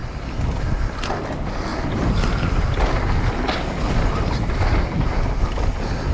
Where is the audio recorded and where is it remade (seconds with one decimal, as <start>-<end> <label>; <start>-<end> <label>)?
0.0-6.1 recorded